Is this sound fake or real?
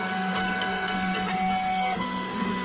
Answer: fake